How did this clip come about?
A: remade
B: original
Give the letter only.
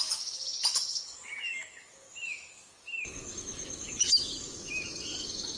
A